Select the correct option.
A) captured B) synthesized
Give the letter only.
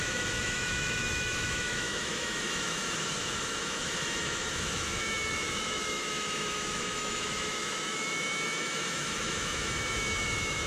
B